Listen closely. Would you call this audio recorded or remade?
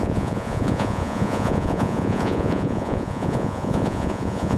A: remade